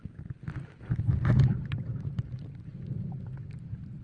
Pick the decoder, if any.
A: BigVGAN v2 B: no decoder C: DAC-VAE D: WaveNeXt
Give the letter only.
B